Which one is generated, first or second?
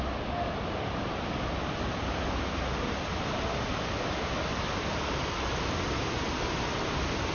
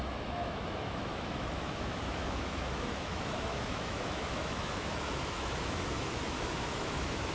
second